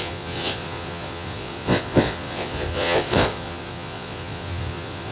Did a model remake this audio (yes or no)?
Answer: yes